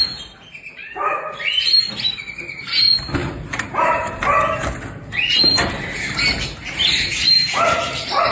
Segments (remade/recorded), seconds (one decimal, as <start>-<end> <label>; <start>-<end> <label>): 0.0-7.4 recorded; 7.4-8.3 remade